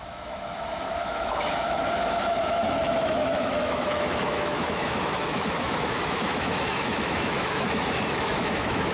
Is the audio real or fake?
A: fake